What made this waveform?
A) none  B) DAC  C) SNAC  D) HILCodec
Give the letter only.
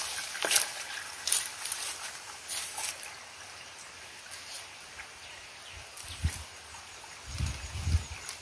A